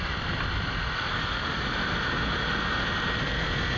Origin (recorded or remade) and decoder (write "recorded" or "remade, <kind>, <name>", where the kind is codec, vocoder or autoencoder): recorded